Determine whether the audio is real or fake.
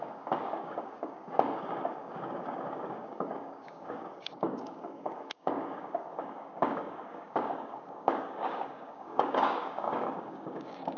fake